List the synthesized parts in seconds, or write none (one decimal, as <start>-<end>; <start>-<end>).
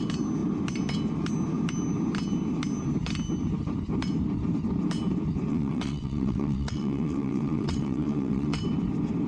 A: 5.5-8.6